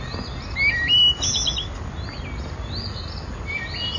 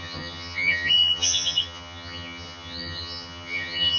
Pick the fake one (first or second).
second